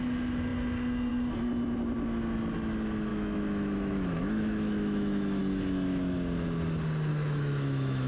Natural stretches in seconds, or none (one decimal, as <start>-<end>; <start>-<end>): 0.0-3.1; 5.4-7.1